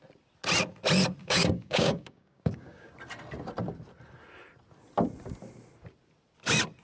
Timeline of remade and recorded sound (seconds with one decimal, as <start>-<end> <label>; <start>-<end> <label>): 0.0-1.2 recorded; 1.2-2.9 remade; 2.9-6.8 recorded